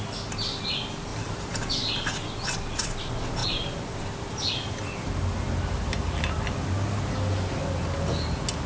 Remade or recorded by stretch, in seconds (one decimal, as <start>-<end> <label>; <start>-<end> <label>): 0.0-1.1 recorded; 1.1-1.7 remade; 1.7-8.7 recorded